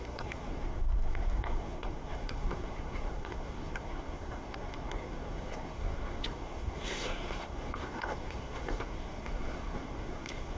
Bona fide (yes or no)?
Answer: no